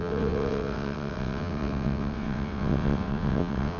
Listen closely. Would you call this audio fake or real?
fake